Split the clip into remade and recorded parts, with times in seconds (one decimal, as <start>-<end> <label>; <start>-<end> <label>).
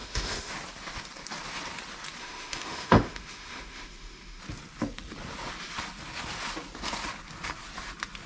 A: 0.0-0.5 remade; 0.5-2.2 recorded; 2.2-4.4 remade; 4.4-8.3 recorded